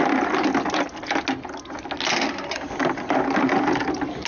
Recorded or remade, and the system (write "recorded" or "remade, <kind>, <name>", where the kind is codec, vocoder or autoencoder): recorded